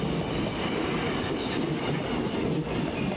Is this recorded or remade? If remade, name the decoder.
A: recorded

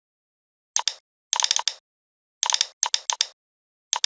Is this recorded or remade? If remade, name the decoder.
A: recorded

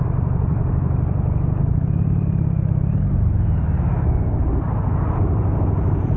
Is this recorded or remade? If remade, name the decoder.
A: remade, vocoder, BigVGAN v2